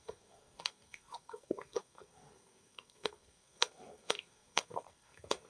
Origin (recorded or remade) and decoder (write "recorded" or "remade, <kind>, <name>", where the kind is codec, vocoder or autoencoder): remade, codec, SNAC